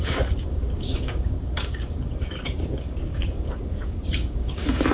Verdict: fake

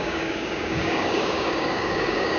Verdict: fake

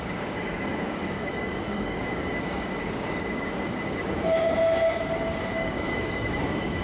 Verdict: fake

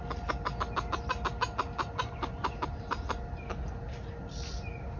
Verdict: real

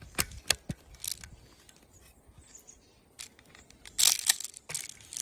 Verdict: real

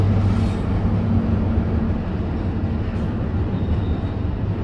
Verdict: real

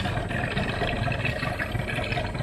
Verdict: real